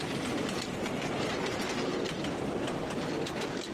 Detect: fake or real real